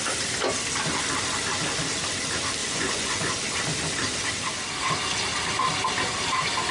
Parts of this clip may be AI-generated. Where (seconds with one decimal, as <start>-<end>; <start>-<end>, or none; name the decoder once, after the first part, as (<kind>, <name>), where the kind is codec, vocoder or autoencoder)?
2.6-3.3 (vocoder, Vocos)

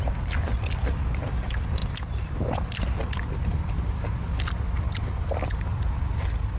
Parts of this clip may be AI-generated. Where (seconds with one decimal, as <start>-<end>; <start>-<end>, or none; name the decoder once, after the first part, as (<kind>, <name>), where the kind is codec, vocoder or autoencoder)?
none